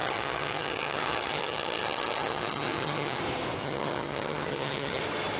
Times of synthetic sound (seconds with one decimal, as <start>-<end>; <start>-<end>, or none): 0.0-3.2; 3.6-5.0